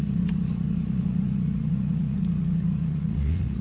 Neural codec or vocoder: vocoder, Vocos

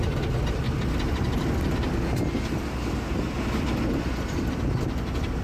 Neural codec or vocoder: none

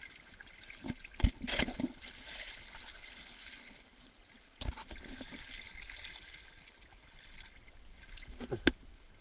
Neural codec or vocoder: none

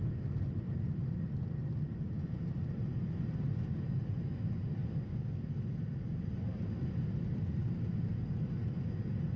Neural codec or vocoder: none